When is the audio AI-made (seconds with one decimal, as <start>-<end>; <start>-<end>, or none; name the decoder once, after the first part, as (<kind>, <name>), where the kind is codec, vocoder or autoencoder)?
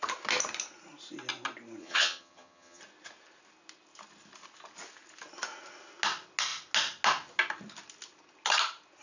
1.8-2.8 (vocoder, HiFi-GAN)